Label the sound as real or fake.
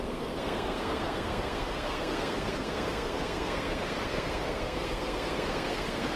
fake